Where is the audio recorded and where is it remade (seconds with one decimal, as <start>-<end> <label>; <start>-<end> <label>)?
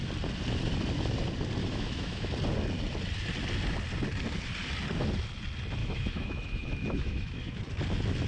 0.0-1.6 recorded; 1.6-2.3 remade; 2.3-5.8 recorded; 5.8-7.6 remade; 7.6-8.3 recorded